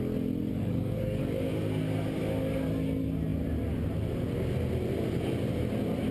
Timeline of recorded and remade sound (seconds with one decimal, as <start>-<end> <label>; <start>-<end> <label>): 0.0-0.5 recorded; 0.5-1.2 remade; 1.2-6.1 recorded